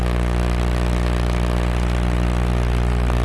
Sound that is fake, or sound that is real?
real